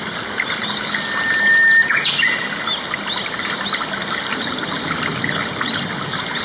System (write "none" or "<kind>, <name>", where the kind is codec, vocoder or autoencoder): none